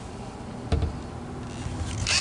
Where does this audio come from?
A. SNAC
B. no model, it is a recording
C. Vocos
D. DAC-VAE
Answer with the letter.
B